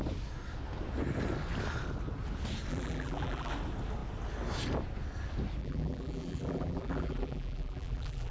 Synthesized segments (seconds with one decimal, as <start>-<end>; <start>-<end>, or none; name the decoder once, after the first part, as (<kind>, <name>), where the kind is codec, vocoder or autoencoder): 2.7-3.5 (vocoder, BigVGAN v2); 5.6-8.3